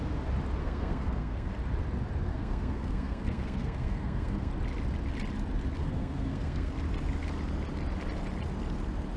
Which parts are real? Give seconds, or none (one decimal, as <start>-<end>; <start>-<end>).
0.0-0.6; 1.5-2.3; 4.5-5.8; 6.7-9.2